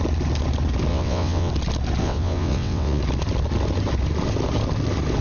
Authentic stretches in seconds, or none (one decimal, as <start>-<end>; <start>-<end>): 0.0-0.9; 1.5-2.0; 3.0-5.2